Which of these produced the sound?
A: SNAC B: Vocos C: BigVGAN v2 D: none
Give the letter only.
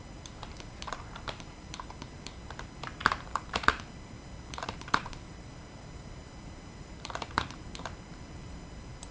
C